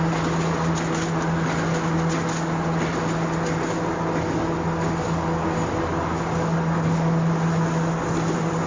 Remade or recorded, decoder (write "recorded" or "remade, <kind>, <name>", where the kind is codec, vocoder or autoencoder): recorded